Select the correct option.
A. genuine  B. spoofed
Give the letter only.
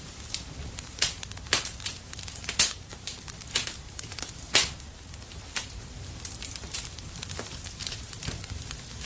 B